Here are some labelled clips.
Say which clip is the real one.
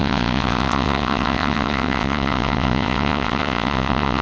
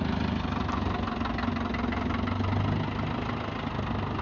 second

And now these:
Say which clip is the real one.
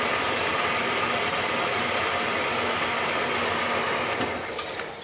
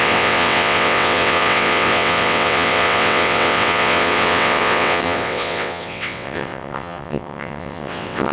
first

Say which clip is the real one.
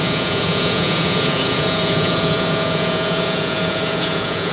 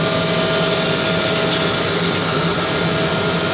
second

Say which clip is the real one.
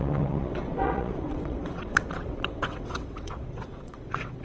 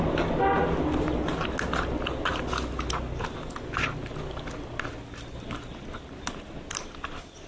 second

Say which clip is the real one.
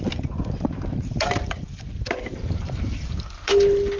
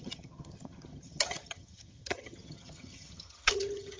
first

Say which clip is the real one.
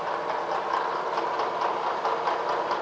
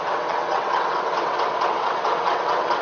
first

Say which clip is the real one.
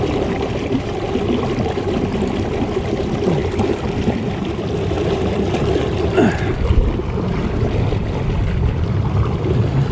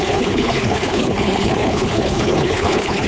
first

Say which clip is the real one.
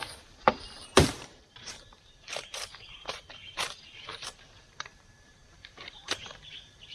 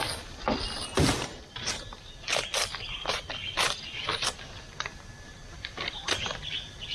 second